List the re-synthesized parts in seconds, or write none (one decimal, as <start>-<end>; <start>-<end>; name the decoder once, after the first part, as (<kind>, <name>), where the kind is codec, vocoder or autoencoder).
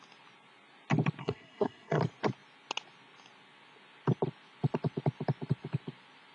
1.2-2.0 (codec, SNAC)